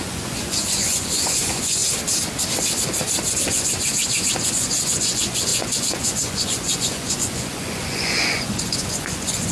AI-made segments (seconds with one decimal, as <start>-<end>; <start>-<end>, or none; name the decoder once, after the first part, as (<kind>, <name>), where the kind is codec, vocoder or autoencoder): 0.0-1.8 (vocoder, Vocos); 3.3-9.5